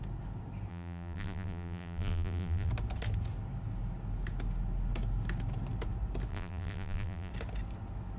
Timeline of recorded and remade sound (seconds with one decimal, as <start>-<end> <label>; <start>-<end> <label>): 0.0-0.7 recorded; 0.7-2.7 remade; 2.7-6.3 recorded; 6.3-7.3 remade; 7.3-8.2 recorded